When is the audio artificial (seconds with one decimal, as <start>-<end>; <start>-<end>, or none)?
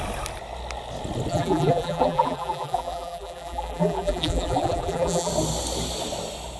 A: 1.3-5.3